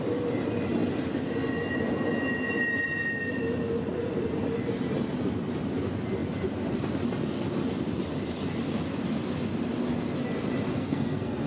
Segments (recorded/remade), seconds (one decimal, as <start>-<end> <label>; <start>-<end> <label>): 0.0-10.7 recorded; 10.7-11.5 remade